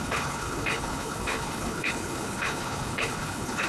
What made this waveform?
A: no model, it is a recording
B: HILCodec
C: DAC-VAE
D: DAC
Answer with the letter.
B